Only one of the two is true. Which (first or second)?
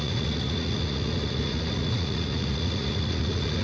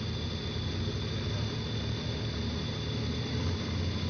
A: second